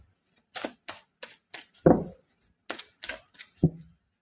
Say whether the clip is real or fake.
real